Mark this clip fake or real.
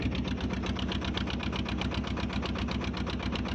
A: real